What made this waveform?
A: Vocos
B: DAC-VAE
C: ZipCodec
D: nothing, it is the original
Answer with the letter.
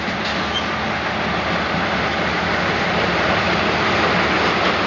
D